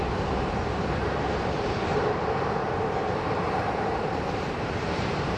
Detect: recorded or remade remade